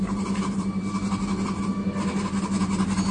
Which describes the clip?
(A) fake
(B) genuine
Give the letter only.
B